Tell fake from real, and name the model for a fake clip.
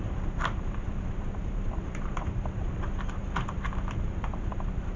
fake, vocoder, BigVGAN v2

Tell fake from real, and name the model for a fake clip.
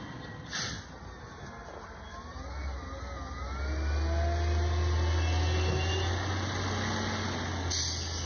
real